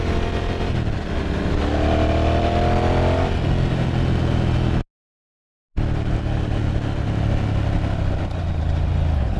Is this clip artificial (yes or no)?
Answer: no